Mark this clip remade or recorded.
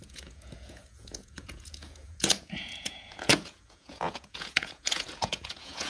remade